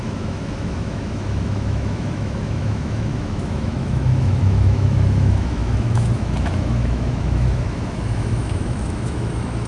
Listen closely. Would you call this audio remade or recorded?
remade